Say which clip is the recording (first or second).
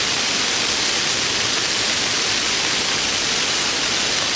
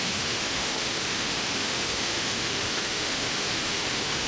first